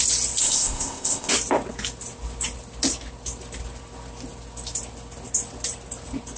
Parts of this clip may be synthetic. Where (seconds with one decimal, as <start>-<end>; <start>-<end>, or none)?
0.4-1.3